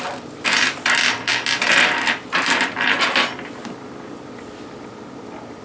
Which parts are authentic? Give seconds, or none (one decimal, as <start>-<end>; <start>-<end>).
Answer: 0.0-5.6